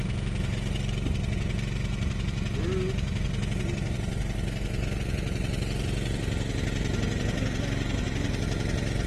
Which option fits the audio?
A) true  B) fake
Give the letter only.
A